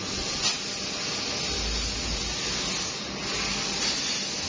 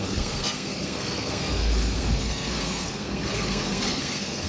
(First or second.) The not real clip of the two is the second